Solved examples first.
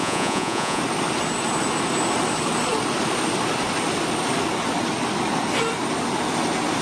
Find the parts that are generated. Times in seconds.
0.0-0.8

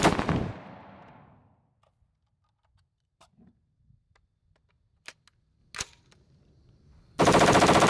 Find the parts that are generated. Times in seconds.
none

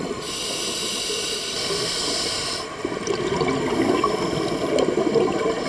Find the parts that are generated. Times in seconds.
2.8-3.4

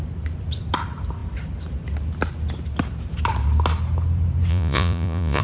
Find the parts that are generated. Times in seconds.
4.5-5.4

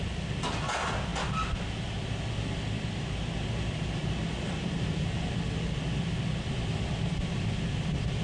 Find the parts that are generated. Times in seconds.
0.0-1.1; 3.6-8.2

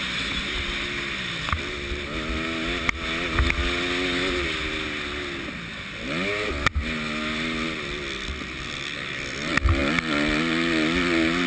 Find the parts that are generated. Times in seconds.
none

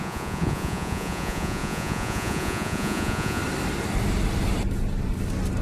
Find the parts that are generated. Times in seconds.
0.0-3.4